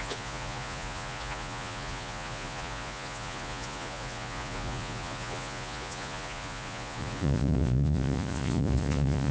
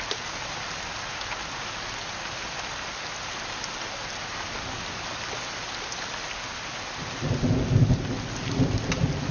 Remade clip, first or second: first